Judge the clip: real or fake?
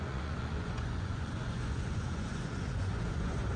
fake